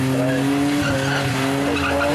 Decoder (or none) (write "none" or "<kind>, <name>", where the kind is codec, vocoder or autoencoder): none